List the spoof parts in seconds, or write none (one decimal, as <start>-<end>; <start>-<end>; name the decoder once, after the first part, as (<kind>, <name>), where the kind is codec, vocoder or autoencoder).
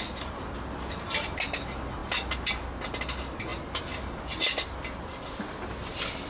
none